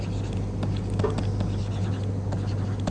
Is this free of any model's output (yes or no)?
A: yes